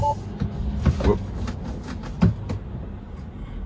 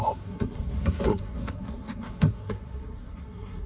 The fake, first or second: second